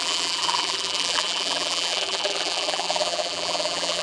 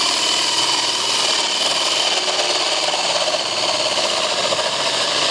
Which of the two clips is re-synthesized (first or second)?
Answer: first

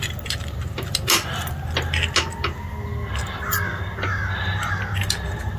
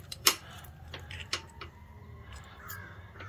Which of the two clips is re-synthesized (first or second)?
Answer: second